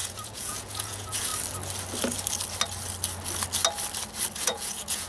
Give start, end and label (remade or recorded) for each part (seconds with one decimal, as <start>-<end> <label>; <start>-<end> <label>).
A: 0.0-1.3 remade; 1.3-4.4 recorded; 4.4-5.1 remade